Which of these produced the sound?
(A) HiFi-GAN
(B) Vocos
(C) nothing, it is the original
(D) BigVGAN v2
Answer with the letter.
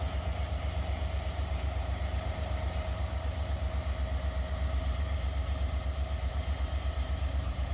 D